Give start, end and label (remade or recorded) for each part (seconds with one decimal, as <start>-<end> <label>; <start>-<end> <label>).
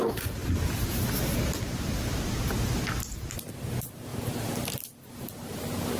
0.0-6.0 recorded